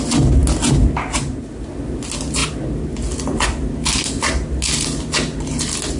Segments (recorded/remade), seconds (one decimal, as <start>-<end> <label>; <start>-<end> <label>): 0.0-6.0 recorded